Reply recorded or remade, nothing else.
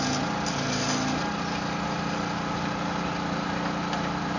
recorded